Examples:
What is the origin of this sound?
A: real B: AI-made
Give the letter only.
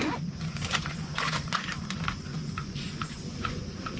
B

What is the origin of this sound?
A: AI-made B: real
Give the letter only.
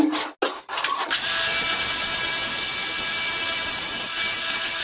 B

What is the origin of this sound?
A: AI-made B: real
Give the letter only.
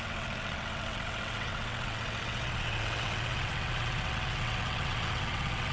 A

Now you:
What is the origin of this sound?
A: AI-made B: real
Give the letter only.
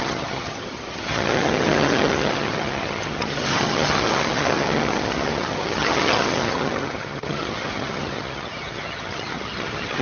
A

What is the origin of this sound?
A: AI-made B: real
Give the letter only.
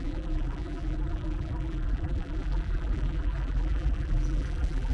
A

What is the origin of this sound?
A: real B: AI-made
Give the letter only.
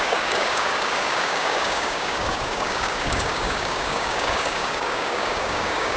B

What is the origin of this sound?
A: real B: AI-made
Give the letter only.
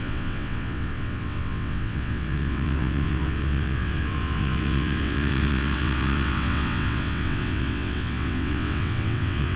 B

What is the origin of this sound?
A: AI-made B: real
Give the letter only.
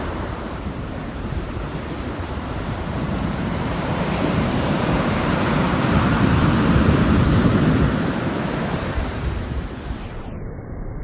A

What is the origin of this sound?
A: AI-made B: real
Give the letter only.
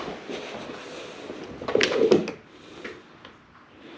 B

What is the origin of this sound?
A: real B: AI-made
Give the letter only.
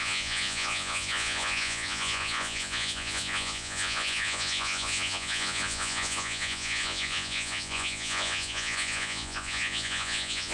B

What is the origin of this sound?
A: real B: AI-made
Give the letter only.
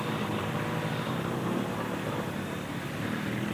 A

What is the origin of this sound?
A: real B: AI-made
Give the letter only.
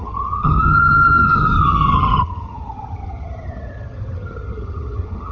B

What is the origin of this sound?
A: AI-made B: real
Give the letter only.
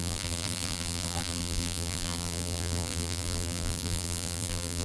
A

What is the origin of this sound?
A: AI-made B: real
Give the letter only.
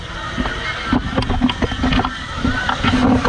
B